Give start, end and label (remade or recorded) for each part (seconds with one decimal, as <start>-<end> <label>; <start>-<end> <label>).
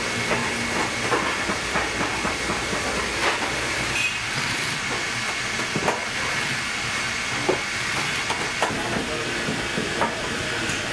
0.0-0.4 remade; 0.4-0.9 recorded; 0.9-8.1 remade; 8.1-9.8 recorded; 9.8-10.9 remade